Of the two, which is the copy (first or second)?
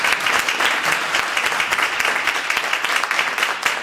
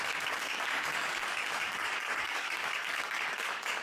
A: second